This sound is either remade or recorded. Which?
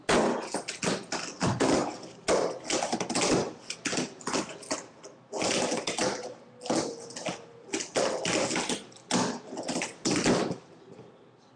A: recorded